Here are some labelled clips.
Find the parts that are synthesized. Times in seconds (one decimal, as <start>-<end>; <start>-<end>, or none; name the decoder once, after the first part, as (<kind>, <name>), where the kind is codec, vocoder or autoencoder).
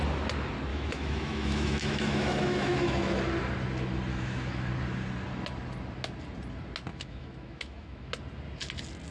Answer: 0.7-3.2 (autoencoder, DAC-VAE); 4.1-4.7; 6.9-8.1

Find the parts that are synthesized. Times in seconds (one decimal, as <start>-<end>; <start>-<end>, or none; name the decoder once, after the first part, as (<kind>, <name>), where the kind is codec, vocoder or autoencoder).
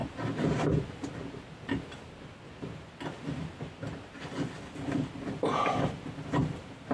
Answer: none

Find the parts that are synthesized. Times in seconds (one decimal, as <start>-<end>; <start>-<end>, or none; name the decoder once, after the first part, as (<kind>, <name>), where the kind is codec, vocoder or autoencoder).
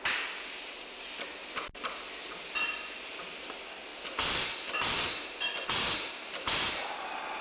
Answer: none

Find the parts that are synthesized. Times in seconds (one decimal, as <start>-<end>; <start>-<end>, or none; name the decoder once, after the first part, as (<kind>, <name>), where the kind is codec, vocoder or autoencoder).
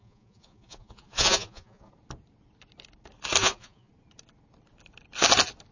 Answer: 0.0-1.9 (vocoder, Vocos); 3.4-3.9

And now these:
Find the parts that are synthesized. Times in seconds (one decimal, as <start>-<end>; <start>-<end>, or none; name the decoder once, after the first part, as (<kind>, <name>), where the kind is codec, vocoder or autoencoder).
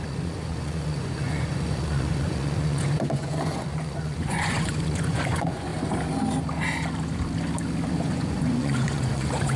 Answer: 0.0-5.7 (vocoder, Vocos); 7.9-9.6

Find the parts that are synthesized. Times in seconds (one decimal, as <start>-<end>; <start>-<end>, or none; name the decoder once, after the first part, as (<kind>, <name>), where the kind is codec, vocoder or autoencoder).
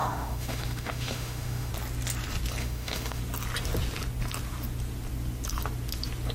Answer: 0.0-1.7 (autoencoder, DAC-VAE); 2.6-3.2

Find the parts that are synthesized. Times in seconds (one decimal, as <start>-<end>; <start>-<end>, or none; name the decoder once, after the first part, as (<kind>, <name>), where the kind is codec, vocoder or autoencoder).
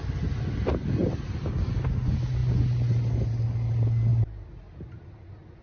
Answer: none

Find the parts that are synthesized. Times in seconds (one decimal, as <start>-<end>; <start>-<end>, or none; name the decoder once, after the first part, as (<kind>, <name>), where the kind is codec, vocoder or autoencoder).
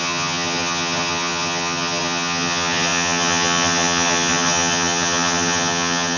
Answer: 0.0-6.2 (vocoder, HiFi-GAN)